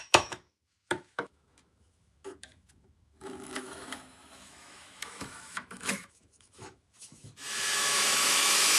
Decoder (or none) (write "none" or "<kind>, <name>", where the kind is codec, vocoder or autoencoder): autoencoder, DAC-VAE